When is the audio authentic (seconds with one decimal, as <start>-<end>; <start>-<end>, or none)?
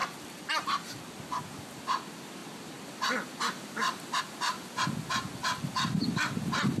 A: 1.1-5.4; 5.9-6.8